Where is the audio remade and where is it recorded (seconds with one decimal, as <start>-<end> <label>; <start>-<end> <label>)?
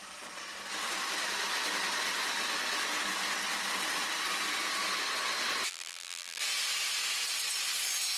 0.0-5.7 recorded; 5.7-6.4 remade; 6.4-8.2 recorded